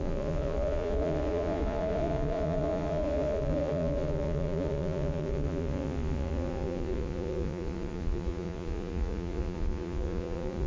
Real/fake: fake